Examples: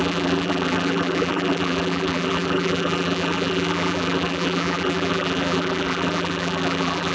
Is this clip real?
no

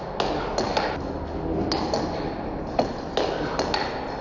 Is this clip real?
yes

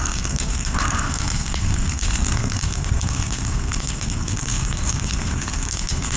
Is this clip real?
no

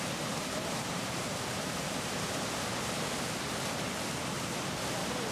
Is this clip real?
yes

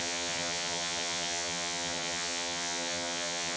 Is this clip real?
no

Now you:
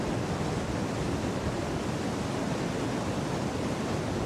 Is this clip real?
yes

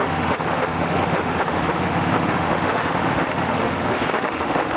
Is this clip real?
no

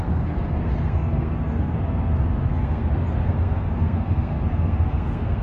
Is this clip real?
no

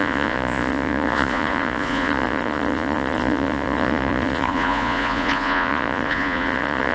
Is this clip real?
no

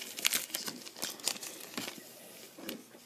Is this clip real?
yes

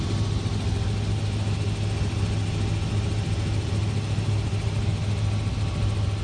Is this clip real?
yes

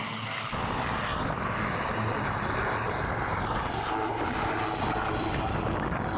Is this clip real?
yes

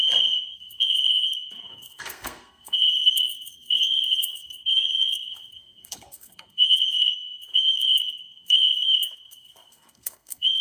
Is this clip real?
no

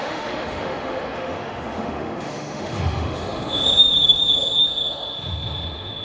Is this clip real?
no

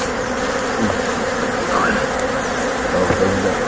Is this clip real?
yes